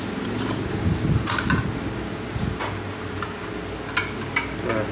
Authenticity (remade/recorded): recorded